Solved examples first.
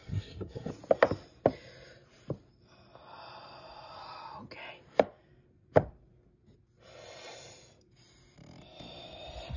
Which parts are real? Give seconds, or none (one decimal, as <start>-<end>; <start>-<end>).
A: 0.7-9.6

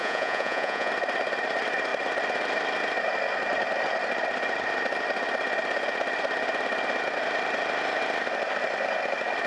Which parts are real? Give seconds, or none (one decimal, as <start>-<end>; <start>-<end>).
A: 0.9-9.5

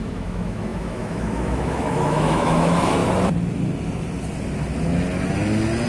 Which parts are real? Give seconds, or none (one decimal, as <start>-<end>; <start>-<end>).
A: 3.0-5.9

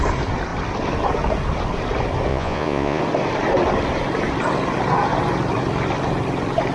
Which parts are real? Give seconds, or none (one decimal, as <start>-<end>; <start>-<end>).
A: 0.0-2.3; 3.0-6.7